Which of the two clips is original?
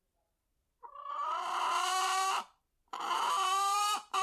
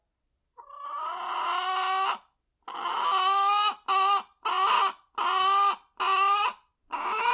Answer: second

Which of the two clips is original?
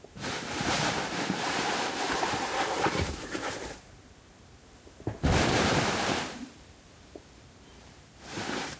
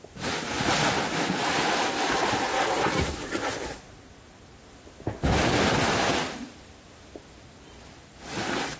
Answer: second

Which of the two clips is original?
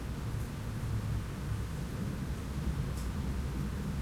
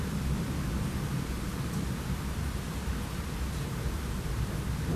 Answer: first